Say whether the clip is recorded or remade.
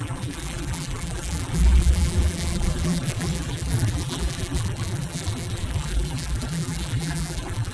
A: remade